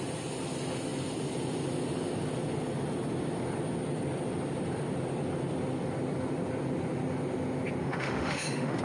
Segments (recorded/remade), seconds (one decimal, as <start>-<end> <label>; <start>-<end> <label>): 0.0-7.8 recorded; 7.8-8.8 remade